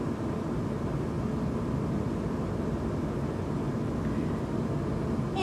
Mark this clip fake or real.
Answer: real